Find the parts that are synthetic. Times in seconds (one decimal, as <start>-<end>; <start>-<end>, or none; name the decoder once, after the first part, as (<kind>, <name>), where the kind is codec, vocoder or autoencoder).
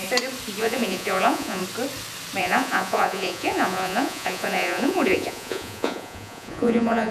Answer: 0.6-1.6 (vocoder, Vocos); 2.4-7.1